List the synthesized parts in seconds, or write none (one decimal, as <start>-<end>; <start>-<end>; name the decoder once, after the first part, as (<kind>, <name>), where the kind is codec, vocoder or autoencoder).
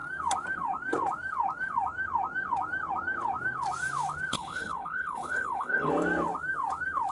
4.3-5.9 (codec, HILCodec)